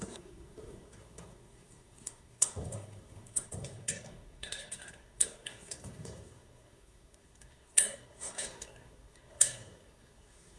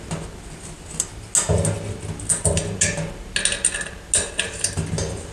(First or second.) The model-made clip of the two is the first